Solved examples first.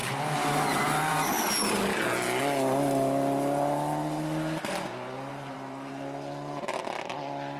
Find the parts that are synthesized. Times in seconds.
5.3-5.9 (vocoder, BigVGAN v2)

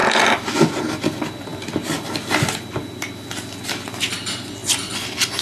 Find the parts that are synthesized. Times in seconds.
0.0-0.5 (vocoder, BigVGAN v2); 4.6-5.4

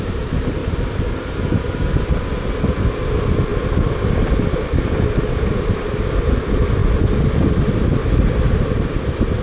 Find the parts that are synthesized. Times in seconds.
0.6-2.0 (vocoder, BigVGAN v2)

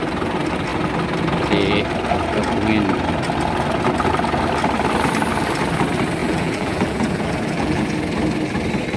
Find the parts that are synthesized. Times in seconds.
6.2-7.9 (vocoder, BigVGAN v2)

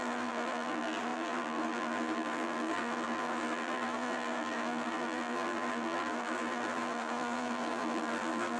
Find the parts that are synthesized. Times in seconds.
0.0-8.6 (vocoder, BigVGAN v2)

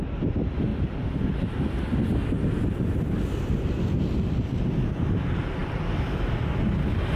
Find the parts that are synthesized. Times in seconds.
none

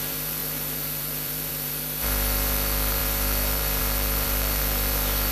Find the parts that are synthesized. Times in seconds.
0.0-5.3 (vocoder, BigVGAN v2)